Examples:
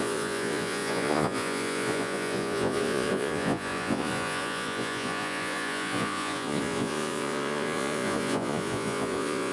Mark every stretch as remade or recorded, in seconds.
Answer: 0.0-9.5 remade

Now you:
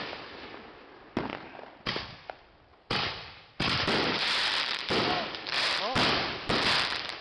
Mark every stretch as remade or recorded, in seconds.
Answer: 0.0-1.3 recorded; 1.3-1.9 remade; 1.9-2.7 recorded; 2.7-5.8 remade; 5.8-7.2 recorded

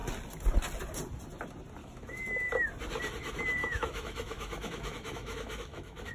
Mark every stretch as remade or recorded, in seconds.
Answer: 0.0-1.8 recorded; 1.8-2.5 remade; 2.5-3.6 recorded; 3.6-6.1 remade

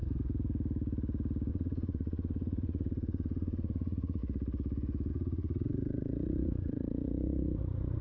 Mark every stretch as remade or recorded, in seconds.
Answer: 0.0-1.5 recorded; 1.5-4.2 remade; 4.2-5.1 recorded; 5.1-8.0 remade